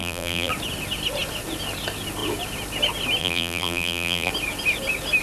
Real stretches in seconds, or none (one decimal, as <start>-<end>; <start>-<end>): 0.5-3.2; 4.3-5.2